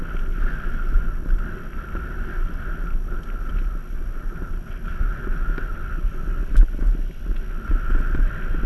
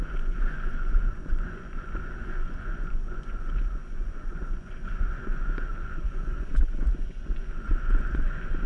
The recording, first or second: first